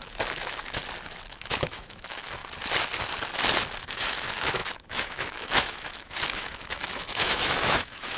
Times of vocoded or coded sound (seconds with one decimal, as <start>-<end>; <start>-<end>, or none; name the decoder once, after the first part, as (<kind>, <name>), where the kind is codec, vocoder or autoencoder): 0.0-0.8 (autoencoder, DAC-VAE); 1.3-2.4; 3.8-8.2